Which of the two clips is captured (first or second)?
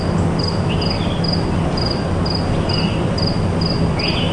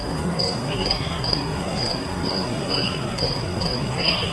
first